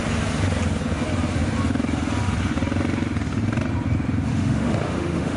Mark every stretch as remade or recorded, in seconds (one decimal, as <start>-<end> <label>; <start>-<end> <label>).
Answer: 0.0-4.3 recorded; 4.3-5.4 remade